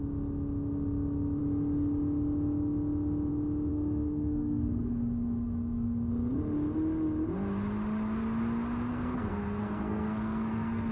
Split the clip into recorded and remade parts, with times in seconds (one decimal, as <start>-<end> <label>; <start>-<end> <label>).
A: 0.0-3.7 recorded; 3.7-6.1 remade; 6.1-8.9 recorded; 8.9-10.9 remade